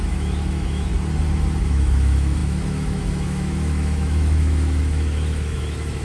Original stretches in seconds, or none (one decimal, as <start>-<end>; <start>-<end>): 0.9-1.6